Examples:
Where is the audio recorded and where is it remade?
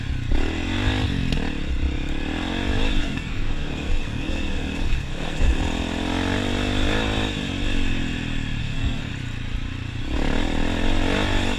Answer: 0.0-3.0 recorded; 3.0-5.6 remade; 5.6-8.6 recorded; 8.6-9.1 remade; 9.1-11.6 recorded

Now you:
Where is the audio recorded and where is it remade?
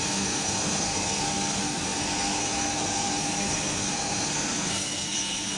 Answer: 0.0-5.6 remade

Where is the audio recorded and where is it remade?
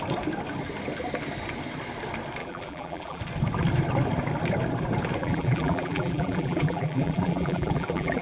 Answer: 0.0-2.4 recorded; 2.4-3.2 remade; 3.2-5.2 recorded; 5.2-8.2 remade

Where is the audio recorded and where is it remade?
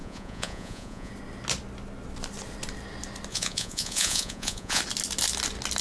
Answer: 0.0-1.1 remade; 1.1-3.3 recorded; 3.3-4.8 remade; 4.8-5.8 recorded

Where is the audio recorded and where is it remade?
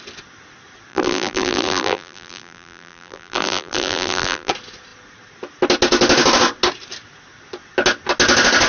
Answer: 0.0-0.9 recorded; 0.9-4.5 remade; 4.5-8.7 recorded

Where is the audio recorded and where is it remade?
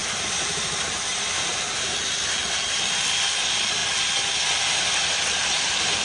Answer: 0.0-2.0 remade; 2.0-2.4 recorded; 2.4-3.2 remade; 3.2-5.4 recorded; 5.4-6.0 remade